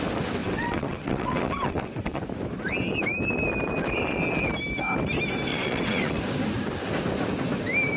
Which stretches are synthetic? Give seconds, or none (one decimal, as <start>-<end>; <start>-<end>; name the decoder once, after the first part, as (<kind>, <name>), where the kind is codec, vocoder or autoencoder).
0.4-2.2 (vocoder, WaveNeXt); 5.5-6.2